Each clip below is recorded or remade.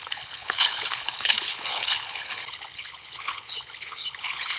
remade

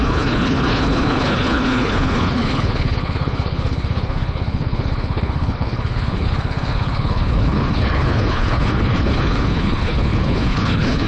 remade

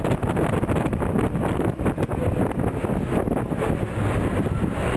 recorded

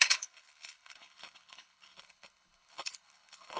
remade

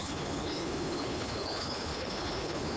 remade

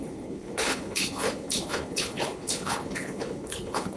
remade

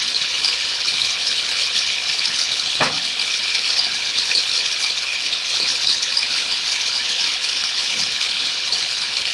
remade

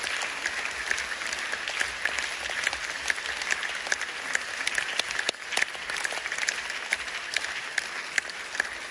recorded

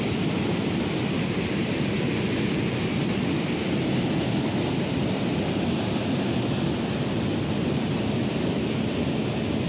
recorded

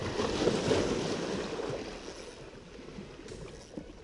recorded